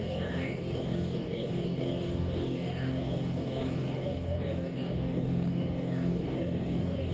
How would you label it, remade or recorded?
remade